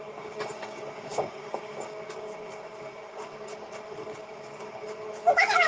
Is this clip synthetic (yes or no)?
yes